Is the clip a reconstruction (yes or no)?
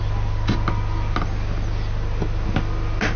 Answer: no